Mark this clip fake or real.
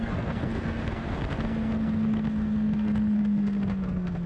fake